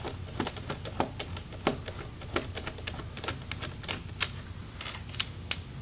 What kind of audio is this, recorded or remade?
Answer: recorded